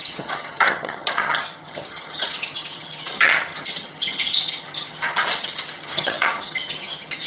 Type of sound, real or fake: fake